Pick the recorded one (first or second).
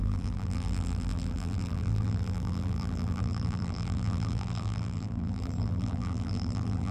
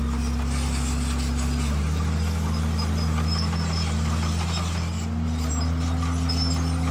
second